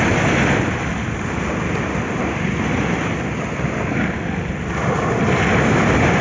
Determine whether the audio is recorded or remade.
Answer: recorded